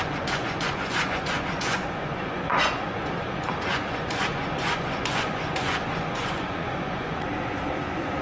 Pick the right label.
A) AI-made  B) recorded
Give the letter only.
A